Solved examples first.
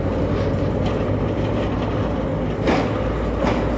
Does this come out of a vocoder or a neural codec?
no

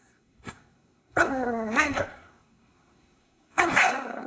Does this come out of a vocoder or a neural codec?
yes